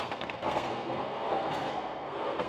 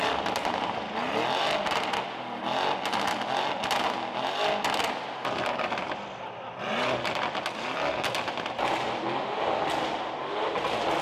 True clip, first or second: second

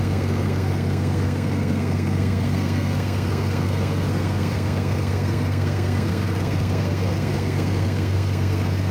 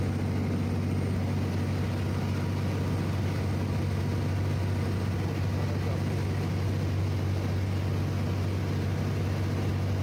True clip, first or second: second